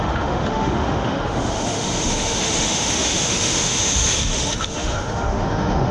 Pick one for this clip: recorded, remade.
remade